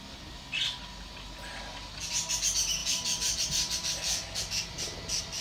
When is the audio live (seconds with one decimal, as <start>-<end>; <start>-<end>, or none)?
0.0-2.8; 5.0-5.4